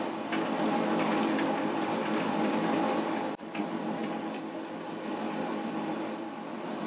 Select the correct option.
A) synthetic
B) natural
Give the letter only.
A